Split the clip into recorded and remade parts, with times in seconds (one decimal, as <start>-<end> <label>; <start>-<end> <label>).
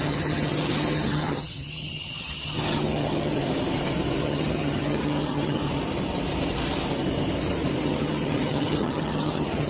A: 0.0-3.4 remade; 3.4-4.2 recorded; 4.2-5.6 remade; 5.6-7.8 recorded; 7.8-9.7 remade